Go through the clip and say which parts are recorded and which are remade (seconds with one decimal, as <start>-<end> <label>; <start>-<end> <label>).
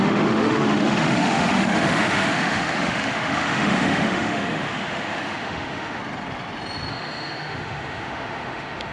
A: 0.0-6.0 remade; 6.0-6.9 recorded; 6.9-8.9 remade